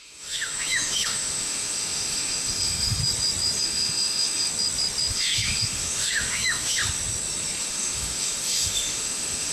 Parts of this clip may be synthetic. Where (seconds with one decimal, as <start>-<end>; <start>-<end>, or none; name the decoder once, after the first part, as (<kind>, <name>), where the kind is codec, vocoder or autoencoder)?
0.0-3.0 (autoencoder, DAC-VAE); 3.6-4.5; 5.1-6.8; 7.6-9.5